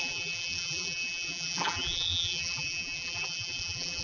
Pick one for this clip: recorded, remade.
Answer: remade